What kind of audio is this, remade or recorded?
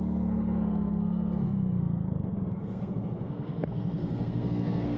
remade